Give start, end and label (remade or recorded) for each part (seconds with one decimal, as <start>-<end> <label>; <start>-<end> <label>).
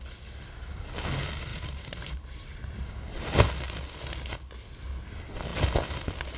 0.0-1.5 recorded; 1.5-3.5 remade; 3.5-6.4 recorded